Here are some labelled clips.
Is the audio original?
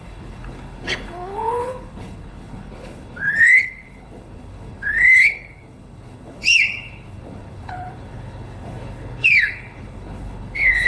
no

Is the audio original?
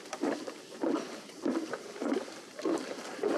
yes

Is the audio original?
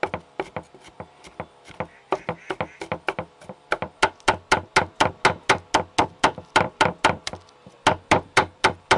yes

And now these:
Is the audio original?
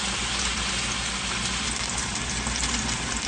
yes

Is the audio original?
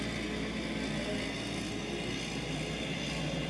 yes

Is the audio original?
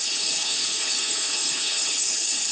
no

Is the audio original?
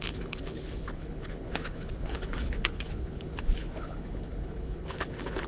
no